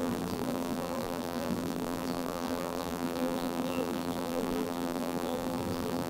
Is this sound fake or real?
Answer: fake